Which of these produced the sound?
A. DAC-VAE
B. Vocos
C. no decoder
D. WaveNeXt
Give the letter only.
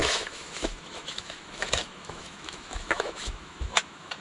A